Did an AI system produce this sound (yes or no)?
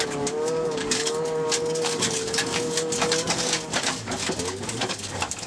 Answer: yes